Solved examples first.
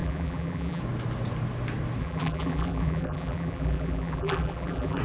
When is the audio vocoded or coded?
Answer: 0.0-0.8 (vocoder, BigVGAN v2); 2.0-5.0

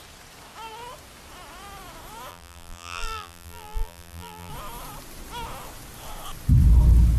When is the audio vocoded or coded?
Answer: 2.3-4.5 (vocoder, BigVGAN v2)

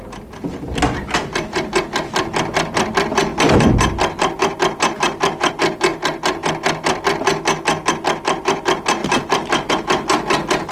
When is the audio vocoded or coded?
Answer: 1.2-1.7 (vocoder, BigVGAN v2); 9.0-9.7

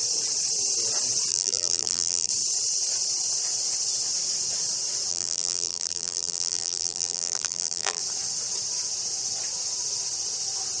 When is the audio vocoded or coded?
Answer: 1.3-2.3 (vocoder, BigVGAN v2); 5.1-8.0

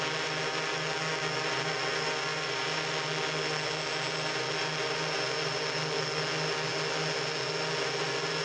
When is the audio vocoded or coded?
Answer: none

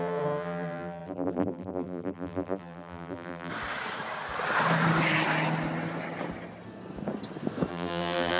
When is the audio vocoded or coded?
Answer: 0.0-3.5 (vocoder, BigVGAN v2); 7.7-8.4